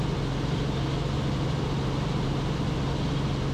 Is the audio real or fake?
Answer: real